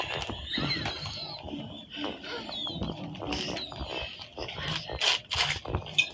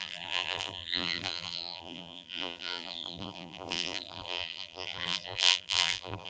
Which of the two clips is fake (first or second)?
second